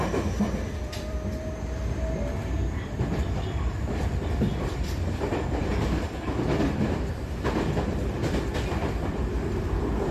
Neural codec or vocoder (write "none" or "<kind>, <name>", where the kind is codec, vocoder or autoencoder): vocoder, BigVGAN v2